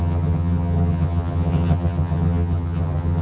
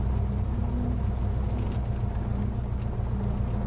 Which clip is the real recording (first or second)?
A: second